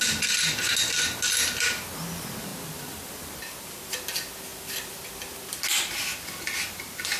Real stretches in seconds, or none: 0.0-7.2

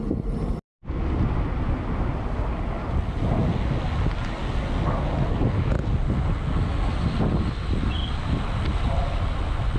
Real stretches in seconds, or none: 0.0-9.8

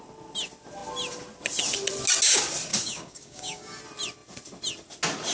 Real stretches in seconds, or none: 0.0-2.7; 3.8-5.3

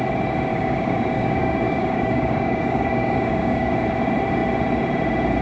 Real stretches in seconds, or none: 0.0-0.5; 3.7-5.4

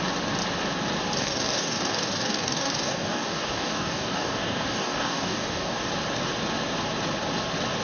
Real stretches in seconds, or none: 0.0-1.2; 5.9-7.8

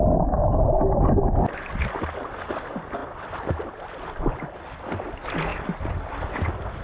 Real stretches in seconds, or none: 0.0-6.8